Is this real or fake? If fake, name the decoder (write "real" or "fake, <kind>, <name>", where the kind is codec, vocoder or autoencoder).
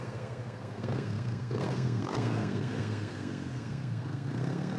fake, codec, SNAC